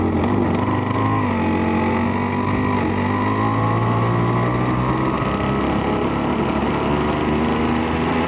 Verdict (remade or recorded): recorded